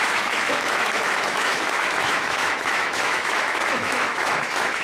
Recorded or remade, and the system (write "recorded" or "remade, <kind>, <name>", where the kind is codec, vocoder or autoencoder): remade, autoencoder, DAC-VAE